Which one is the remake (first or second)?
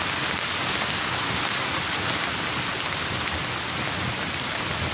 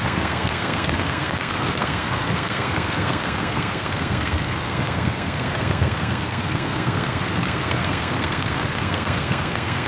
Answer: second